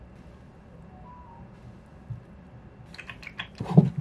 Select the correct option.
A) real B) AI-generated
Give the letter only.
A